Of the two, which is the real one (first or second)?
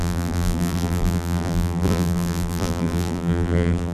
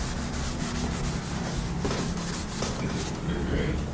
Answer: second